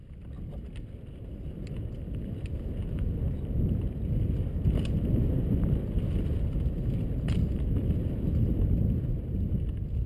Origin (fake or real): real